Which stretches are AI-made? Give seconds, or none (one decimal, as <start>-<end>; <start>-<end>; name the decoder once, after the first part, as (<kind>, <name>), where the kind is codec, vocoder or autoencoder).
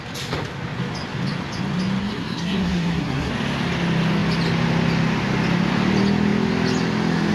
2.0-3.3 (codec, SNAC)